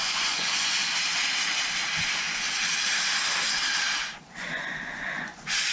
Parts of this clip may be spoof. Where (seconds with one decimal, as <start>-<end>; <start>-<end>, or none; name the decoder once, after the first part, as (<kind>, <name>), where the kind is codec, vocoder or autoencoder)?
0.0-0.8 (vocoder, Vocos); 4.2-5.7